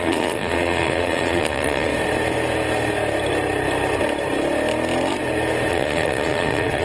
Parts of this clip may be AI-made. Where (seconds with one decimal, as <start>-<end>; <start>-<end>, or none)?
0.0-1.9; 5.7-6.8